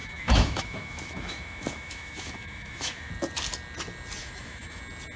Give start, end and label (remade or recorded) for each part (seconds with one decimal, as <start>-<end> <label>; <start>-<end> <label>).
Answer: 0.0-3.1 remade; 3.1-4.2 recorded; 4.2-4.8 remade; 4.8-5.2 recorded